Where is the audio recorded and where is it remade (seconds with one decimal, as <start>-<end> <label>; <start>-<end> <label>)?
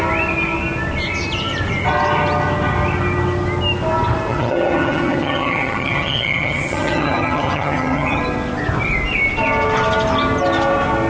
0.0-4.3 recorded; 4.3-8.2 remade; 8.2-11.1 recorded